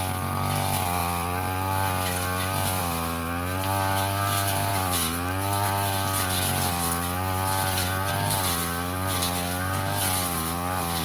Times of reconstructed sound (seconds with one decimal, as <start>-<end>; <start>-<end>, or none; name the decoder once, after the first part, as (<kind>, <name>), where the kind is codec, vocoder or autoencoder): none